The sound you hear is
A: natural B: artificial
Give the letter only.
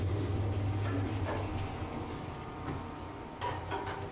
A